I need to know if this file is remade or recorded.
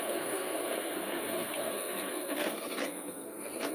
remade